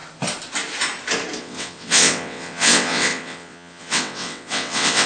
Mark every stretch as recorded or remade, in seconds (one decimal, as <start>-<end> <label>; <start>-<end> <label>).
0.0-1.4 recorded; 1.4-5.1 remade